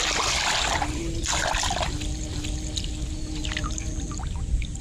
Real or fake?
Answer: real